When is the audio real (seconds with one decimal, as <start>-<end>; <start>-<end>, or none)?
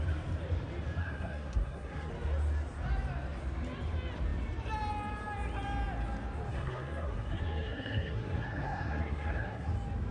0.0-1.0; 2.1-6.5; 9.7-10.1